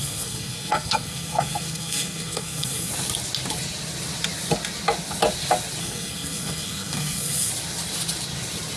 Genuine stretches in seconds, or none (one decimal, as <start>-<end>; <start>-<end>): 2.9-5.8; 7.5-8.8